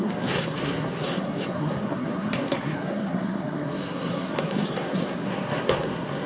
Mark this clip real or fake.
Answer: fake